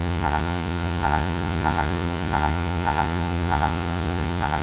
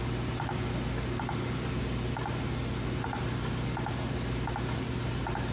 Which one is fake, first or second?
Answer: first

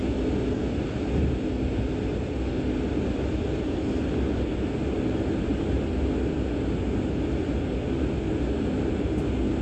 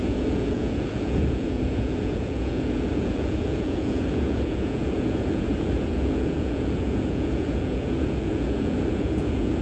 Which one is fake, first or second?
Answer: second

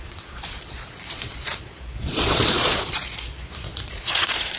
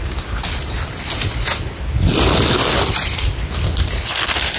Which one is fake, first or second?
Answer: first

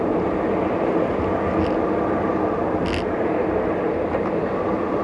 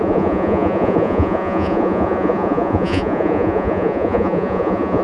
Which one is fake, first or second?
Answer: second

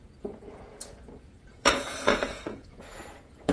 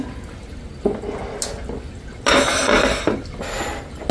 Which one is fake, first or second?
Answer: first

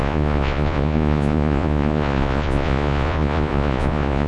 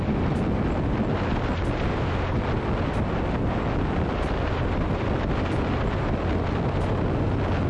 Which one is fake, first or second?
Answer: first